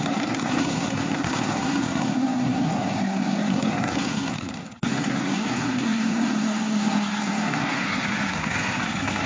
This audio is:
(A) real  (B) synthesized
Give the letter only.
B